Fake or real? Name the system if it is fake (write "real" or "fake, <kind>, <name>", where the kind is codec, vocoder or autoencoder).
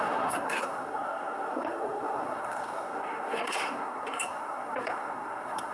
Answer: fake, codec, SNAC